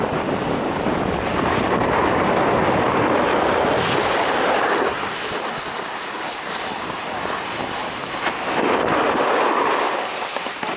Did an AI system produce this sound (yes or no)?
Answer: no